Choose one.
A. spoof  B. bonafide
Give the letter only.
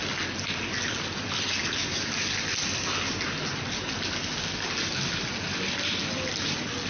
B